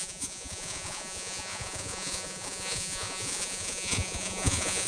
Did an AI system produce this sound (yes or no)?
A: yes